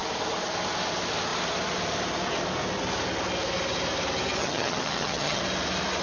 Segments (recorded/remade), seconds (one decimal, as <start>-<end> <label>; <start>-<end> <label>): 0.0-4.4 recorded; 4.4-5.4 remade; 5.4-6.0 recorded

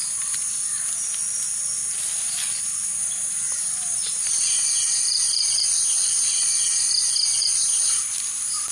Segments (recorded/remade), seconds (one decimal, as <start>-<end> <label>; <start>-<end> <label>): 0.0-3.0 recorded; 3.0-6.9 remade; 6.9-7.4 recorded; 7.4-8.7 remade

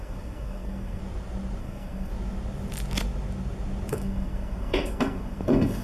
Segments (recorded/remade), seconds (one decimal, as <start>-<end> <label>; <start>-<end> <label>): 0.0-1.0 remade; 1.0-1.6 recorded; 1.6-2.1 remade; 2.1-3.9 recorded; 3.9-5.8 remade